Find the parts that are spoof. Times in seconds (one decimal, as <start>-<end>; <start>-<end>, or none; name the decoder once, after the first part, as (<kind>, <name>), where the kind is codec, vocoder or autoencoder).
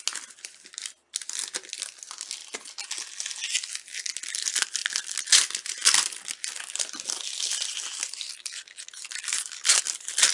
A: none